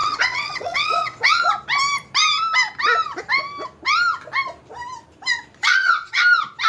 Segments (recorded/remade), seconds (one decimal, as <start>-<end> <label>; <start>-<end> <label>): 0.0-1.5 remade; 1.5-5.6 recorded; 5.6-6.2 remade; 6.2-6.7 recorded